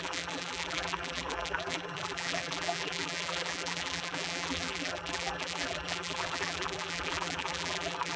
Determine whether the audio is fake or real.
fake